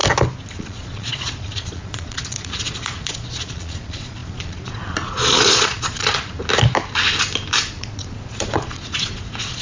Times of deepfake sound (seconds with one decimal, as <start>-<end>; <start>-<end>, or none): 0.6-6.2; 7.8-9.6

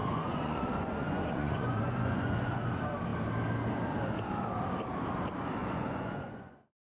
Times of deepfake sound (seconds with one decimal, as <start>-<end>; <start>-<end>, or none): 0.0-2.7; 5.6-6.8

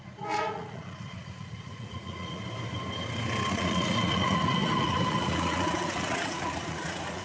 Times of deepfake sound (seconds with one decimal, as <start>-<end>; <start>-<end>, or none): 0.0-2.4; 3.5-7.2

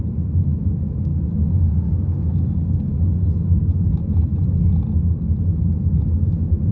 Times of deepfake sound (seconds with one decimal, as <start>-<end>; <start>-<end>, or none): none